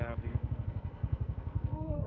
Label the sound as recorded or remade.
remade